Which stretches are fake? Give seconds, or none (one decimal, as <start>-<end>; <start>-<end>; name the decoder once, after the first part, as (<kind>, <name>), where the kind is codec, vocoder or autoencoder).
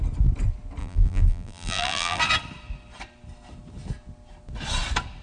0.8-2.2 (vocoder, BigVGAN v2)